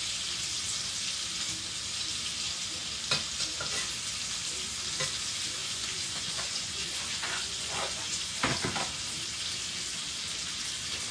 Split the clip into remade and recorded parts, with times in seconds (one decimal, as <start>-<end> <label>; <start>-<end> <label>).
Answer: 0.0-5.6 recorded; 5.6-8.4 remade; 8.4-11.1 recorded